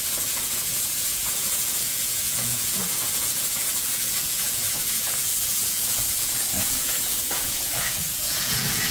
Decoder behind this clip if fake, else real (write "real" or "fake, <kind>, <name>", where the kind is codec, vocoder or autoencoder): fake, vocoder, Vocos